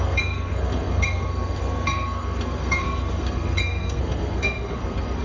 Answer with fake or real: fake